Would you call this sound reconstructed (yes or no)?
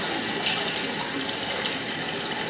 no